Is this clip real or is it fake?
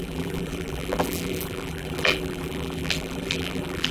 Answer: fake